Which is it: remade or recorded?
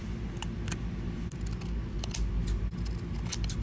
recorded